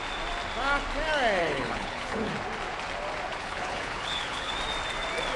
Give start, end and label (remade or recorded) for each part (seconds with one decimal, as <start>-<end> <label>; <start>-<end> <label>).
0.0-1.4 recorded; 1.4-2.3 remade; 2.3-3.3 recorded; 3.3-4.5 remade; 4.5-5.4 recorded